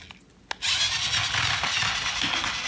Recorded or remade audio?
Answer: recorded